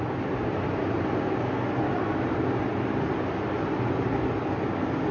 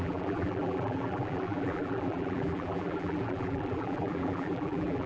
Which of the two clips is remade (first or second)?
second